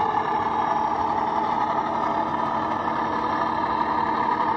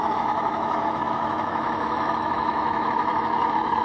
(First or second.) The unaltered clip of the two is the first